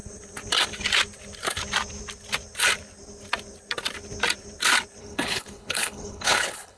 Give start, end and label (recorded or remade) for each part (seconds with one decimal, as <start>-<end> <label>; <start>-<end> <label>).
0.0-5.0 recorded; 5.0-6.8 remade